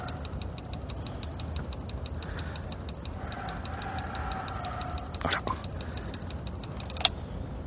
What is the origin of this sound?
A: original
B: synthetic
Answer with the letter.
A